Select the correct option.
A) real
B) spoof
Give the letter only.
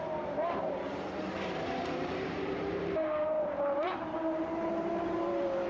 B